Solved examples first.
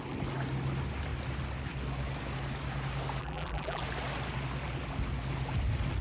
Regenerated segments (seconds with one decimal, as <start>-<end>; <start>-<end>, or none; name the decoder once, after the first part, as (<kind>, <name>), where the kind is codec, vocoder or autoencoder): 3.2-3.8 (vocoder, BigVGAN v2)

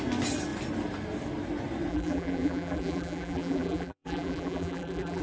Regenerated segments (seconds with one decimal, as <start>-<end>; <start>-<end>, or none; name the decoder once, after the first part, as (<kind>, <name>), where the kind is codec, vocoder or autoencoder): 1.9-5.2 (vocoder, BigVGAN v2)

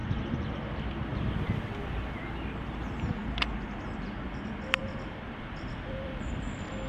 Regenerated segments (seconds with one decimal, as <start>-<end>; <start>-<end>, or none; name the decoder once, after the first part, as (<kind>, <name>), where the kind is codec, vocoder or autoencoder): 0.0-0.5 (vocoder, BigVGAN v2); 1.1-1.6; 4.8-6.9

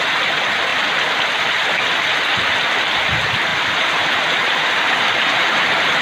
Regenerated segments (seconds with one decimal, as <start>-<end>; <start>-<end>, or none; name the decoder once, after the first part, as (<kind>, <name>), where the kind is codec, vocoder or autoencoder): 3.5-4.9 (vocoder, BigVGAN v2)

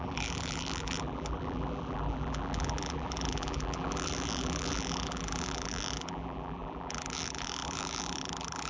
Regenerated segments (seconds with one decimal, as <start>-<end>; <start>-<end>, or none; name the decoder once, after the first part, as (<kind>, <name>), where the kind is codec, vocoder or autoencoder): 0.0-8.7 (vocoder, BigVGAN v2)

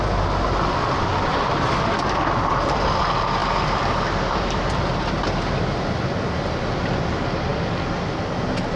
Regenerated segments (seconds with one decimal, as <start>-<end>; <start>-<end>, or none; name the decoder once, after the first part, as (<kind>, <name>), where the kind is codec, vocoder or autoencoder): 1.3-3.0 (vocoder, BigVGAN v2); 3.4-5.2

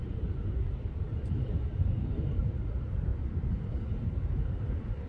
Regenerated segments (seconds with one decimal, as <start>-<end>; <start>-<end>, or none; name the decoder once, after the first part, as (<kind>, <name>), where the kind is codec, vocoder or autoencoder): 0.0-3.1 (vocoder, BigVGAN v2); 3.9-5.1

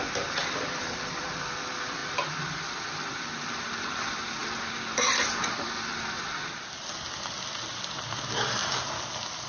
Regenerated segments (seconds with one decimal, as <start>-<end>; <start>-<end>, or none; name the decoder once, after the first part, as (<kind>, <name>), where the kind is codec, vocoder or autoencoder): 0.0-5.9 (vocoder, BigVGAN v2); 7.2-8.6